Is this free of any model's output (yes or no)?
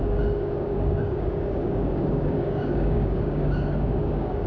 no